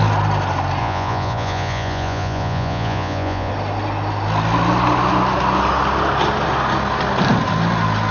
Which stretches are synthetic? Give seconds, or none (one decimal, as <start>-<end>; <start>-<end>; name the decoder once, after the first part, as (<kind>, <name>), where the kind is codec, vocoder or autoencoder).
0.8-3.5 (vocoder, Vocos)